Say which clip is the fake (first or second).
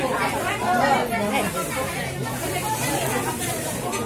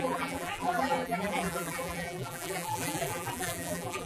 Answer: second